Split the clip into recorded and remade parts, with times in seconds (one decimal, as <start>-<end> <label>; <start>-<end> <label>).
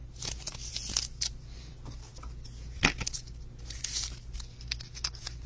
0.0-5.5 recorded